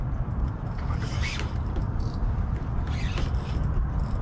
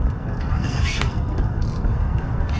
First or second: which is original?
first